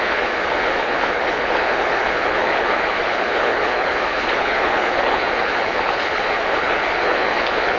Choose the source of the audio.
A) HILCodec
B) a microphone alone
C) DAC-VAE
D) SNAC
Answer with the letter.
A